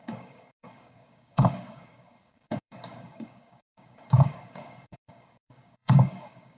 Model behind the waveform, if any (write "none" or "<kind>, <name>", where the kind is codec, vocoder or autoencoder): codec, DAC